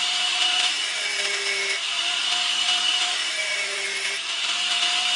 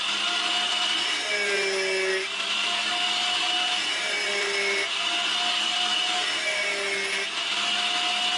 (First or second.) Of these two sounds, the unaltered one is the second